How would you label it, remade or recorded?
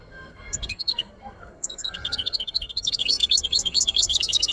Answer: remade